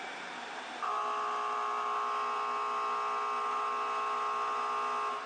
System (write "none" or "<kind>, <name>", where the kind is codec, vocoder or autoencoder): none